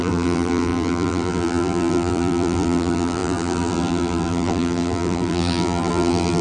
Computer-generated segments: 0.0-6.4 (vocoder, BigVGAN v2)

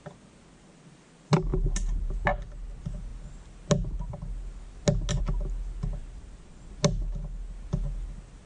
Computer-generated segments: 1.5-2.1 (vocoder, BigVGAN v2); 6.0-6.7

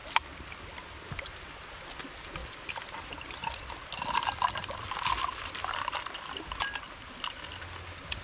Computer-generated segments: 0.0-0.6 (vocoder, BigVGAN v2); 2.4-7.0

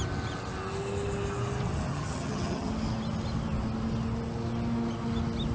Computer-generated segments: 1.9-2.7 (vocoder, HiFi-GAN)

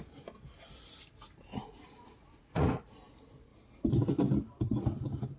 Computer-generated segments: 1.5-2.8 (vocoder, Vocos)